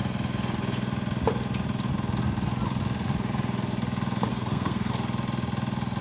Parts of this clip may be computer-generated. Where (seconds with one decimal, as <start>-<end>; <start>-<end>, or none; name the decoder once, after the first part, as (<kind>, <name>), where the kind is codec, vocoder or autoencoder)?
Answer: 4.3-4.9 (codec, SNAC)